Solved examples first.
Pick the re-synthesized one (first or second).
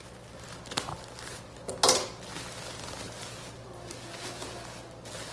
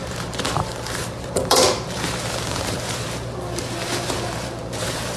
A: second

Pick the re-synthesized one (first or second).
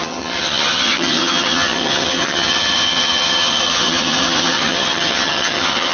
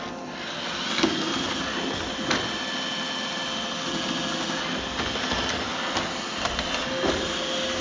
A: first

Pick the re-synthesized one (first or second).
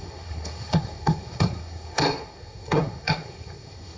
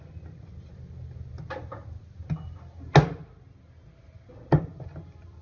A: first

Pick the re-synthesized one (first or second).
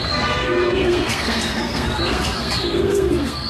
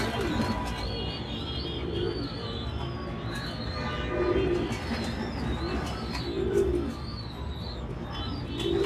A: first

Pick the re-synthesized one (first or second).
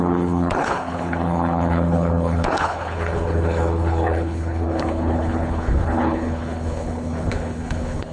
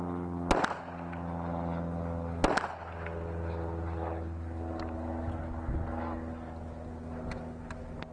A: first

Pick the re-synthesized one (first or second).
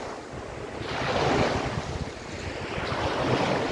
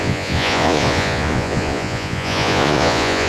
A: second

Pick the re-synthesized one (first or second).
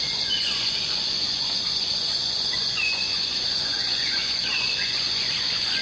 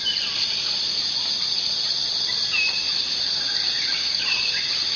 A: first